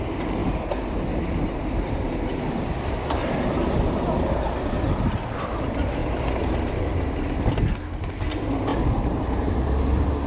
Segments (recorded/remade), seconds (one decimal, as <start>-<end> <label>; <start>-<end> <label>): 0.0-0.4 recorded; 0.4-3.0 remade; 3.0-6.0 recorded; 6.0-6.7 remade; 6.7-8.7 recorded; 8.7-9.7 remade; 9.7-10.3 recorded